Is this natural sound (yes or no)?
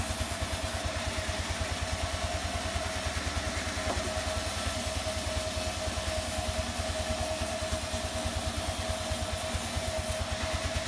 yes